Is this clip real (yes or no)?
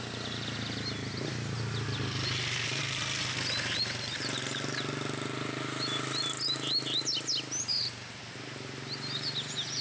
yes